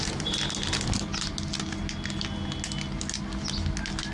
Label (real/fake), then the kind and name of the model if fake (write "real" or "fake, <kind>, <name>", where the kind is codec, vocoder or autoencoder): real